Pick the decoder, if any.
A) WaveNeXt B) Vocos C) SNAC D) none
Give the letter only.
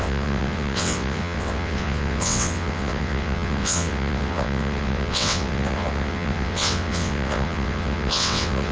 A